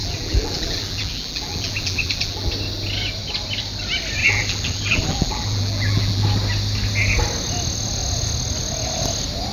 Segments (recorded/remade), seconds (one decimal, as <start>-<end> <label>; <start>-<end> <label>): 0.0-2.5 remade; 2.5-4.2 recorded; 4.2-6.2 remade; 6.2-9.5 recorded